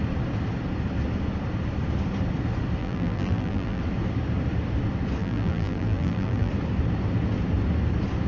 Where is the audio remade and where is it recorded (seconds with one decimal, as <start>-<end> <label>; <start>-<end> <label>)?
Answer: 0.0-2.8 recorded; 2.8-3.8 remade; 3.8-5.2 recorded; 5.2-6.5 remade; 6.5-8.3 recorded